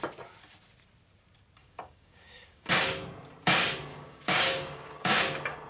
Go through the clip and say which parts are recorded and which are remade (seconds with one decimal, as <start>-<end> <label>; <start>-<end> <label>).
0.0-1.6 recorded; 1.6-2.7 remade; 2.7-3.9 recorded; 3.9-5.2 remade; 5.2-5.7 recorded

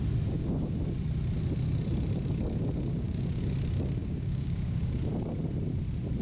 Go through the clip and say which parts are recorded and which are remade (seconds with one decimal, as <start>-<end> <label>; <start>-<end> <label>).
0.0-2.9 recorded; 2.9-3.4 remade; 3.4-4.0 recorded; 4.0-5.1 remade; 5.1-6.2 recorded

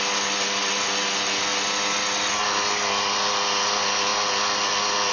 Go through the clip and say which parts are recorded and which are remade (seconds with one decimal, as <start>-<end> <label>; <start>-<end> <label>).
0.0-5.1 recorded

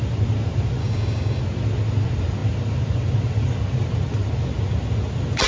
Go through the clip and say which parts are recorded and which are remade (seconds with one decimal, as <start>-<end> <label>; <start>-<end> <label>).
0.0-0.8 recorded; 0.8-1.4 remade; 1.4-5.5 recorded

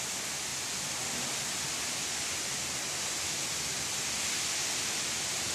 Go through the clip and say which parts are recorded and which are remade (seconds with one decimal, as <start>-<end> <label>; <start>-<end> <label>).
0.0-5.5 recorded

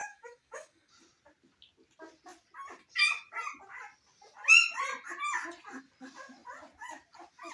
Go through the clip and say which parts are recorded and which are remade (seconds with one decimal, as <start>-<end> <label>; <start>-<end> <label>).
0.0-0.9 remade; 0.9-7.5 recorded

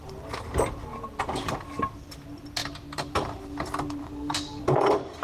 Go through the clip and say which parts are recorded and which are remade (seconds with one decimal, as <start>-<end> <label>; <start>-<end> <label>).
0.0-4.0 recorded; 4.0-4.6 remade; 4.6-5.2 recorded

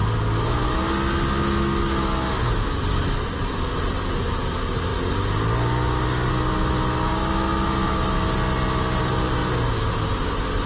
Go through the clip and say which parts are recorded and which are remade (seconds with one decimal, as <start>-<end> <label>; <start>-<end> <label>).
0.0-10.7 recorded